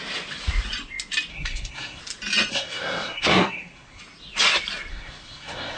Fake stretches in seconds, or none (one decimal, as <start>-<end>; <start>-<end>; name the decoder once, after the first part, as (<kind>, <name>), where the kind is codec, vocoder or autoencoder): 1.3-2.0 (codec, SNAC); 2.5-4.0; 4.9-5.8